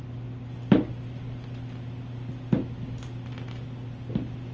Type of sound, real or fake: real